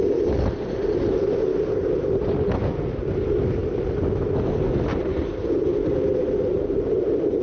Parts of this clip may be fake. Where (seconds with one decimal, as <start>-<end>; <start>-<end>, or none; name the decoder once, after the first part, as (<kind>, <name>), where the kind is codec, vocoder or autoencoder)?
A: none

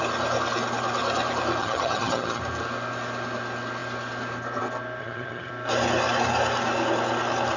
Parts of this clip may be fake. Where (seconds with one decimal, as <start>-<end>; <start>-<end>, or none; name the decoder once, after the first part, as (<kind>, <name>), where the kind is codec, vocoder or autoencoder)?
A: 1.6-2.4 (vocoder, HiFi-GAN); 5.0-5.5

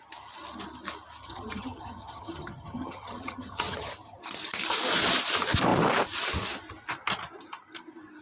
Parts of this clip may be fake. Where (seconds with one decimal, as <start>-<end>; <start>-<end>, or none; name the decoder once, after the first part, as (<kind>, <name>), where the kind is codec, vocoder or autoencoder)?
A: 1.2-4.2 (vocoder, HiFi-GAN)

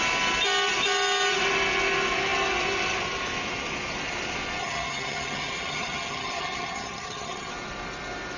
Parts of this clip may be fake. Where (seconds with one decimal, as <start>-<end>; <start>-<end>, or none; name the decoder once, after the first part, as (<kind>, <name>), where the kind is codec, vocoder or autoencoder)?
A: 4.6-7.5 (vocoder, HiFi-GAN)

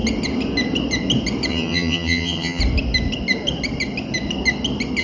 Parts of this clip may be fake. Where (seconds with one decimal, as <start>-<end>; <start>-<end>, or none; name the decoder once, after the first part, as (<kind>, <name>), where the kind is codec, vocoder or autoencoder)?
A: 1.5-2.6 (vocoder, HiFi-GAN)

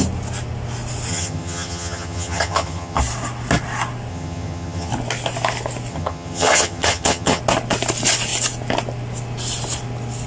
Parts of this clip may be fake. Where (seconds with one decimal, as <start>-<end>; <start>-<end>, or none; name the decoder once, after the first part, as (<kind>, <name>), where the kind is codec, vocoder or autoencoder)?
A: 1.1-3.0 (vocoder, HiFi-GAN); 4.1-4.9; 5.9-7.4

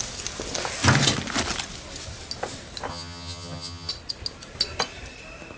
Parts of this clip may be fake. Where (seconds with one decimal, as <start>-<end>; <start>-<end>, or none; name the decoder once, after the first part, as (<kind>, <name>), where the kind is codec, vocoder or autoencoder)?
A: 2.9-3.9 (vocoder, HiFi-GAN)